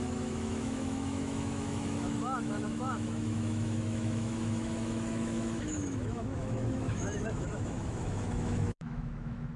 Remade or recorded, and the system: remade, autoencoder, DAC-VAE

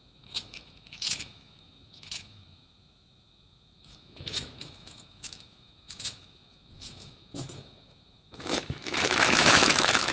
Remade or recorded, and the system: remade, autoencoder, DAC-VAE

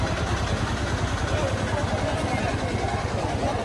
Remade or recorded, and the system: recorded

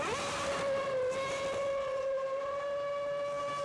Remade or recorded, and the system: recorded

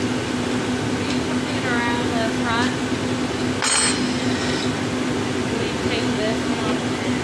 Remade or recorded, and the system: recorded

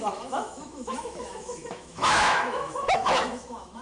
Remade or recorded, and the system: remade, autoencoder, DAC-VAE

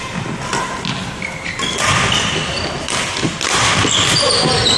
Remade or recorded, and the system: recorded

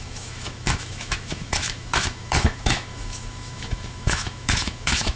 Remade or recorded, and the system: remade, autoencoder, DAC-VAE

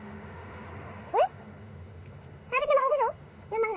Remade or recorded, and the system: remade, autoencoder, DAC-VAE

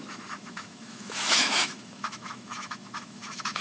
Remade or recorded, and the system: remade, autoencoder, DAC-VAE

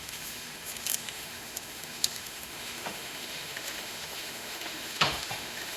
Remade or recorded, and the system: remade, autoencoder, DAC-VAE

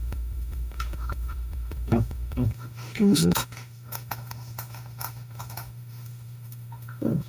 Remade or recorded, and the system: remade, autoencoder, DAC-VAE